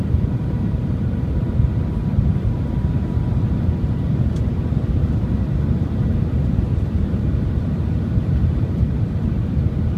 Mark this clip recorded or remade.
remade